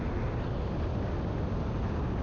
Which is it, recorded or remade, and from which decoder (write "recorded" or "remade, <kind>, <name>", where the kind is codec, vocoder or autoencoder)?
recorded